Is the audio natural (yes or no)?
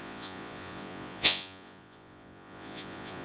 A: no